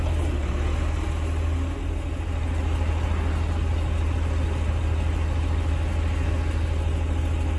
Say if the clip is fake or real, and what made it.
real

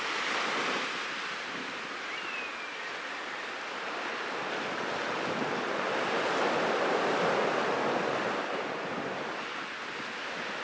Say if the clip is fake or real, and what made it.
real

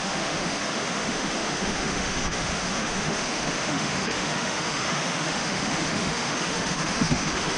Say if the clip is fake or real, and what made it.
fake, autoencoder, DAC-VAE